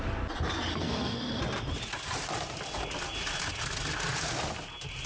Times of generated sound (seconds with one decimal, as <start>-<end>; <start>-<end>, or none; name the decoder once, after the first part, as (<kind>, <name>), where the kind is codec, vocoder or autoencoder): 0.7-1.4 (codec, SNAC)